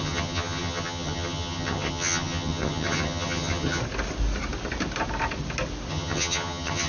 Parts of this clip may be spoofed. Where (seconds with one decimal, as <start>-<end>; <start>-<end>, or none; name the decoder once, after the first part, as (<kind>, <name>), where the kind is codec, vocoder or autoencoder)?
0.0-3.8 (vocoder, HiFi-GAN); 5.9-6.9